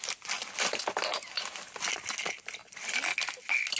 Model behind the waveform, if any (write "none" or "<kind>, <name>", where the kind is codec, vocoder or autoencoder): none